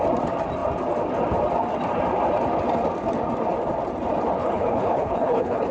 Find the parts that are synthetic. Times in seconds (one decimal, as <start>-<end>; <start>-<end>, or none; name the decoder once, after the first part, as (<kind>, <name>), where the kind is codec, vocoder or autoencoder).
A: 4.4-5.7 (codec, HILCodec)

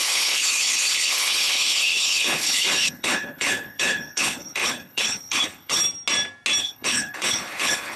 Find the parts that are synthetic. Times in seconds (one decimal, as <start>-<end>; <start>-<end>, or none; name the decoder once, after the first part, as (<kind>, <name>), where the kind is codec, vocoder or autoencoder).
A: 0.0-5.8 (codec, HILCodec); 6.6-8.0

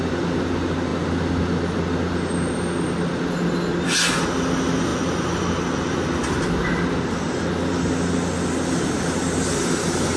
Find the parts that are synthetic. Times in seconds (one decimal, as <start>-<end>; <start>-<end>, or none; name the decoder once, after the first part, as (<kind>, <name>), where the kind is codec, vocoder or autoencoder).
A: none

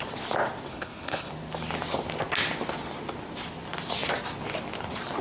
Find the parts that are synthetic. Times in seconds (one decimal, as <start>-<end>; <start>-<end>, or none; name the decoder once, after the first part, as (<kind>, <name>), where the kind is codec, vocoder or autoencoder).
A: 0.7-1.3 (codec, HILCodec)

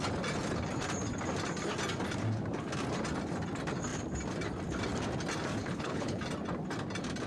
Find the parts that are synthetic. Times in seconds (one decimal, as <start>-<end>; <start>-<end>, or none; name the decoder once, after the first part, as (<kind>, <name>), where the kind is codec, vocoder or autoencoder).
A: 5.6-6.2 (codec, HILCodec)

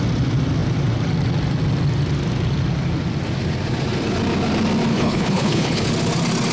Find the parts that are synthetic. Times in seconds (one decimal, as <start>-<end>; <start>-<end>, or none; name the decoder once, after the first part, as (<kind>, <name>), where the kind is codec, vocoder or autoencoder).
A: 4.9-5.9 (codec, HILCodec)